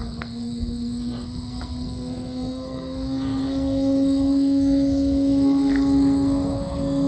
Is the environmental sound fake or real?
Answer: fake